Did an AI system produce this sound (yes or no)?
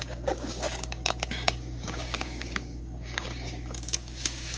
yes